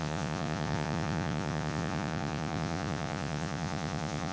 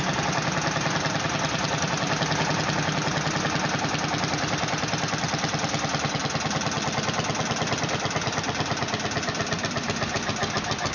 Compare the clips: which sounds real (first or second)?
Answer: second